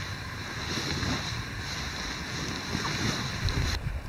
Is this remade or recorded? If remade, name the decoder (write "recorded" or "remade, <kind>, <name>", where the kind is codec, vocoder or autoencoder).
recorded